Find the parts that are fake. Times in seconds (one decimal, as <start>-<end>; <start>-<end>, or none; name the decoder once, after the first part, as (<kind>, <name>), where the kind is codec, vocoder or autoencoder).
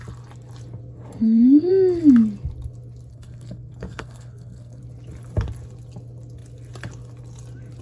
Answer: 1.2-1.7 (codec, SNAC); 3.1-4.8